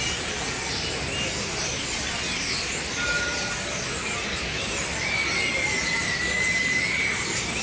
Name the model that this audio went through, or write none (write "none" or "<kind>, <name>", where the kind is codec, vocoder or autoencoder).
none